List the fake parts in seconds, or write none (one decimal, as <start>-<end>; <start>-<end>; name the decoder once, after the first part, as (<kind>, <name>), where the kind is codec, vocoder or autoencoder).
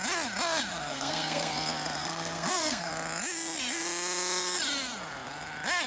0.7-1.5 (codec, SNAC); 2.0-2.9